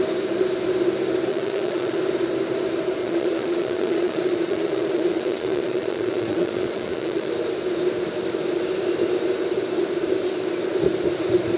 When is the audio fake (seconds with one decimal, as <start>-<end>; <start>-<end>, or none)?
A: 1.3-2.0; 3.0-7.3